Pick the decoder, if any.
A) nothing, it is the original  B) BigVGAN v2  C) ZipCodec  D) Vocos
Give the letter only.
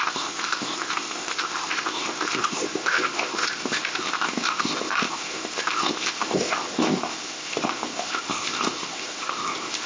C